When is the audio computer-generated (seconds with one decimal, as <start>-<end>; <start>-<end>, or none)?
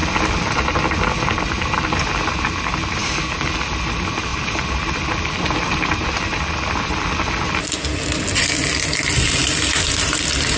4.3-8.2; 9.4-10.6